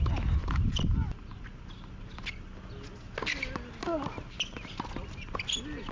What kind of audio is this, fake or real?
real